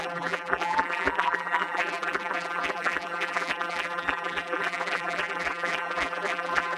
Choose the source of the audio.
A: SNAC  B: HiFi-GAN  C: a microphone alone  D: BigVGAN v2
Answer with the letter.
D